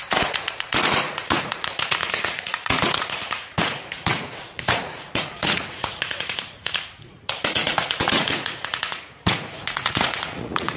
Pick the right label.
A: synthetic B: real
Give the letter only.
A